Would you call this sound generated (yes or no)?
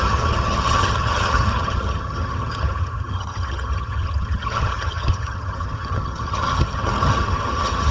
yes